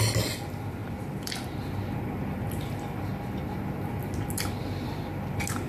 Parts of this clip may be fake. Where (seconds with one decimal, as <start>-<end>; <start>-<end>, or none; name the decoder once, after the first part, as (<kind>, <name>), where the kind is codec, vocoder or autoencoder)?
none